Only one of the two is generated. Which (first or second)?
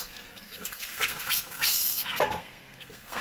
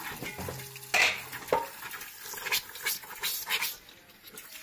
first